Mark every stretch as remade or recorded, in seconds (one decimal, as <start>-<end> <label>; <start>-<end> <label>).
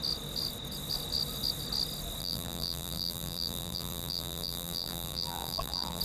0.0-2.2 recorded; 2.2-6.0 remade